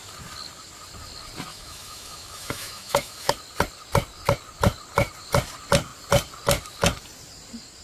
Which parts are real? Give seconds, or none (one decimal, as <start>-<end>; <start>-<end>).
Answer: 0.0-1.5; 3.3-7.8